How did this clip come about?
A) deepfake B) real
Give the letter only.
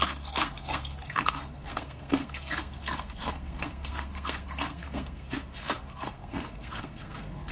A